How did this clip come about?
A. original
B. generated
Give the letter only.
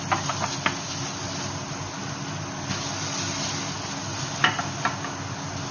A